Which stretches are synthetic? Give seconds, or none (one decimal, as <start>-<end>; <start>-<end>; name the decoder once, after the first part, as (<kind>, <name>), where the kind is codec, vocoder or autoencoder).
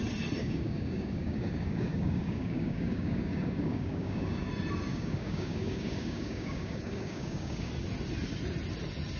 0.4-4.5 (codec, DAC); 4.9-7.7